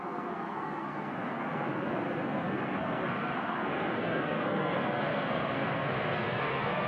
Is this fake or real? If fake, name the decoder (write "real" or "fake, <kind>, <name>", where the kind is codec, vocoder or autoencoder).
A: fake, codec, SNAC